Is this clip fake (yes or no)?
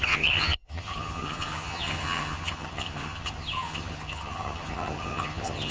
yes